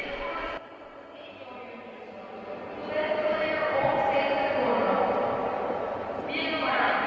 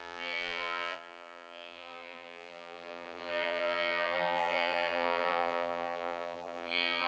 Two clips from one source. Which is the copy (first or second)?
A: second